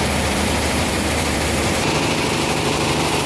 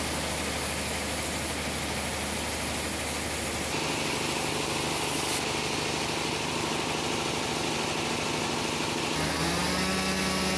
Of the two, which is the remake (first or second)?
first